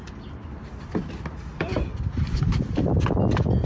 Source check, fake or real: real